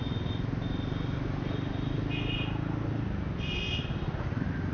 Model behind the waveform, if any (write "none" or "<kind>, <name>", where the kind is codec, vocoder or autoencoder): none